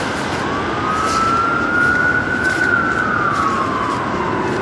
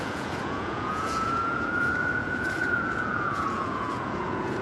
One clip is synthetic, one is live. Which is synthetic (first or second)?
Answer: second